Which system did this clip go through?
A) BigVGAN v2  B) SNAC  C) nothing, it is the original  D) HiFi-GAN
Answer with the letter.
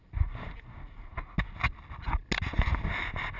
C